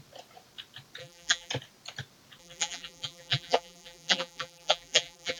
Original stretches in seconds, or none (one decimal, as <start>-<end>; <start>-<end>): 0.0-1.0; 1.5-2.4